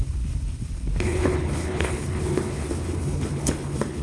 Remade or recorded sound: remade